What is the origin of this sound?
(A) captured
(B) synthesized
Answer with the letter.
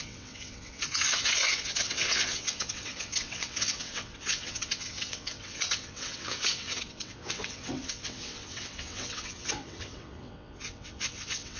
B